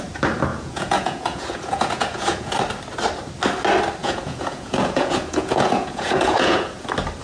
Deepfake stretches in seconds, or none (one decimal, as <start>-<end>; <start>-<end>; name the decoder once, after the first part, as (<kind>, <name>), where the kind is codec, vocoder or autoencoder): 0.5-2.5 (vocoder, Vocos); 4.0-6.8